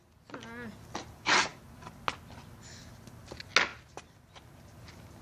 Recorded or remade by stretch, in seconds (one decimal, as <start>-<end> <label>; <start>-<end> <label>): 0.0-5.2 recorded